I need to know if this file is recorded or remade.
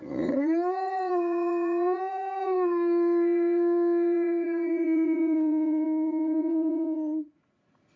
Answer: remade